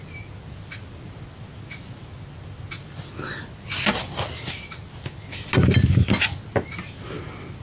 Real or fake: real